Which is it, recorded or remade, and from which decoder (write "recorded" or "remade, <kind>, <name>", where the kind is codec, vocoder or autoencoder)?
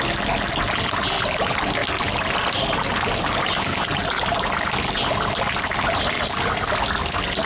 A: recorded